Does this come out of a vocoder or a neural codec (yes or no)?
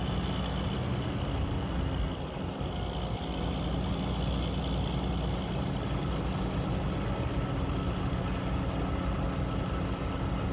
no